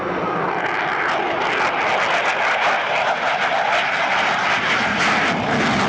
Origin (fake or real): real